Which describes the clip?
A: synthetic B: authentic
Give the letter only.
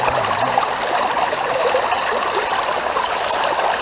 B